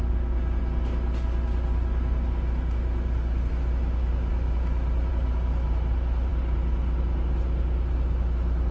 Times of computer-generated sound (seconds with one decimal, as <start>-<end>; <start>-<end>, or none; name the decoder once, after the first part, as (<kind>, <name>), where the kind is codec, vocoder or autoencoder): none